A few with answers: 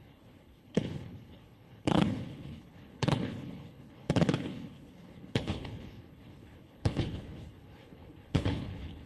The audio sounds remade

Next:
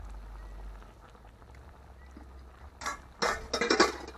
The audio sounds recorded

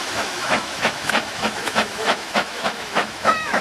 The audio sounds remade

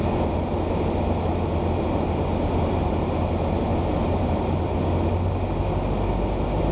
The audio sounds recorded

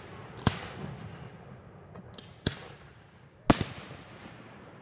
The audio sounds recorded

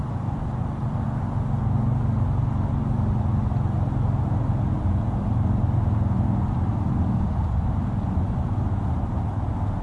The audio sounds recorded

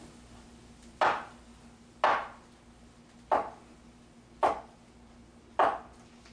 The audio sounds recorded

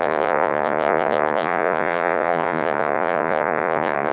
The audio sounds remade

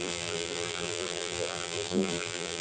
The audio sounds remade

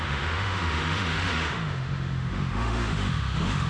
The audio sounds remade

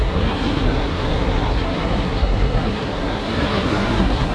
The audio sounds remade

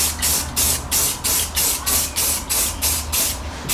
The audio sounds recorded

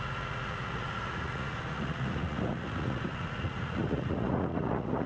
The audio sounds remade